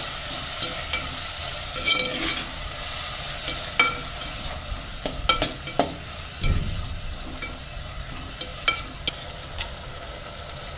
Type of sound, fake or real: real